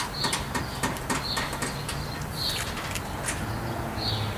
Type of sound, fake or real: real